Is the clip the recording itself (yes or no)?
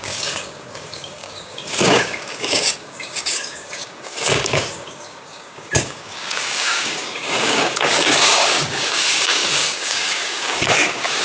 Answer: no